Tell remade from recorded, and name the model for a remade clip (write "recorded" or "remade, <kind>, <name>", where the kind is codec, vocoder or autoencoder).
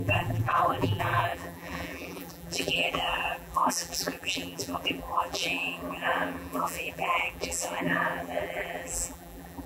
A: remade, vocoder, BigVGAN v2